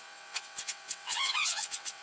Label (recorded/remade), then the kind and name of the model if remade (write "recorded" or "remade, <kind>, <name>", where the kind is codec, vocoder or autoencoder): remade, vocoder, WaveNeXt